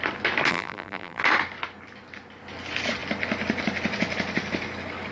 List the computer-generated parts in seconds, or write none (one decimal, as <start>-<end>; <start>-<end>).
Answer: 0.5-1.2